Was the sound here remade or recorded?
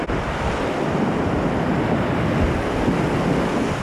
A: recorded